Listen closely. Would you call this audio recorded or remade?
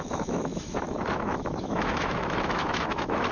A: remade